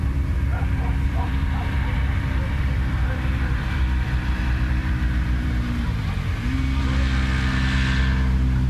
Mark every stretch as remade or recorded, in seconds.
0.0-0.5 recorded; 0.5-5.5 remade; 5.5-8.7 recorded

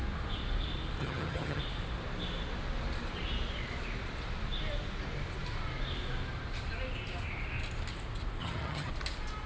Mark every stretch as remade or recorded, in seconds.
0.0-1.0 recorded; 1.0-1.6 remade; 1.6-8.4 recorded; 8.4-8.9 remade; 8.9-9.5 recorded

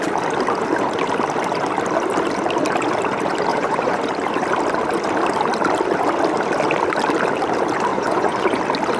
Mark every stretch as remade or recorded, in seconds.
0.0-3.5 recorded; 3.5-4.0 remade; 4.0-7.9 recorded; 7.9-8.6 remade; 8.6-9.0 recorded

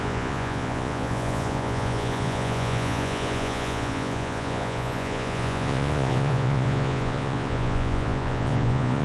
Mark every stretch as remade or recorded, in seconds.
0.0-9.0 remade

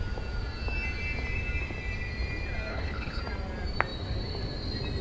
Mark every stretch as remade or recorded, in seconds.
0.0-2.7 recorded; 2.7-3.2 remade; 3.2-5.0 recorded